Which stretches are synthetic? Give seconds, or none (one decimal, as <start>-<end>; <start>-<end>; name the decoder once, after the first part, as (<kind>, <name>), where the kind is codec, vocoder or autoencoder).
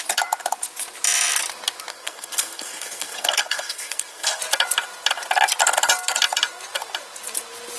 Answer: 1.9-4.4 (codec, SNAC)